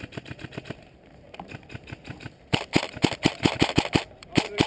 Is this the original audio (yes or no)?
no